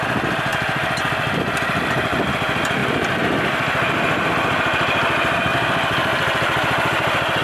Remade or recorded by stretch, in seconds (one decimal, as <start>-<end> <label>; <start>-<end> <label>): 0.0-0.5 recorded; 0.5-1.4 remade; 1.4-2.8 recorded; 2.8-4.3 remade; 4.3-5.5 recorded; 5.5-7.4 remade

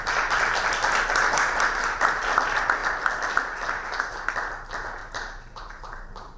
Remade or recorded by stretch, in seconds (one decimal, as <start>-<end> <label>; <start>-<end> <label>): 0.0-5.0 recorded; 5.0-6.4 remade

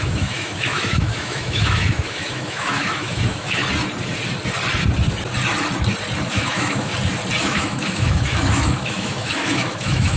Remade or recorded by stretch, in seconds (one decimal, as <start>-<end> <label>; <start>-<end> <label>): 0.0-3.6 remade; 3.6-6.3 recorded; 6.3-6.9 remade; 6.9-7.4 recorded; 7.4-10.2 remade

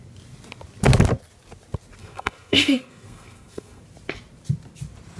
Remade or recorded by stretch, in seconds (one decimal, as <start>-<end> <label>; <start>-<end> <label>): 0.0-2.0 recorded; 2.0-3.8 remade; 3.8-5.2 recorded

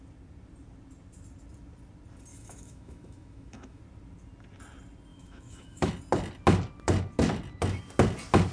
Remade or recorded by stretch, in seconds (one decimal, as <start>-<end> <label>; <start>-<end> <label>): 0.0-2.3 recorded; 2.3-3.8 remade; 3.8-5.1 recorded; 5.1-5.9 remade; 5.9-8.5 recorded

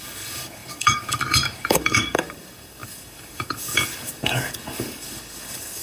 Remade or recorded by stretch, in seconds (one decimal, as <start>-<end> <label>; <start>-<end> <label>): 0.0-5.8 remade

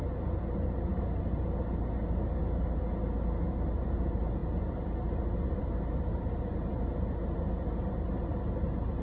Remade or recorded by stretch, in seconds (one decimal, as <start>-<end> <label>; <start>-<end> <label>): 0.0-9.0 recorded

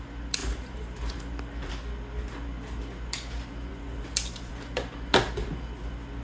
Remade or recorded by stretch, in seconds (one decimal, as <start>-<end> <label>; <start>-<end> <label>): 0.0-0.4 recorded; 0.4-1.0 remade; 1.0-6.2 recorded